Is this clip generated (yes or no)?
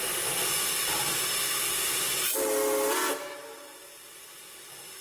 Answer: no